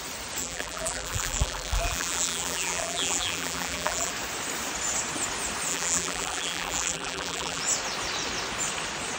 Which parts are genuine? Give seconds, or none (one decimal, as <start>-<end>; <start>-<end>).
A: 0.0-0.4; 4.1-5.7; 7.6-9.2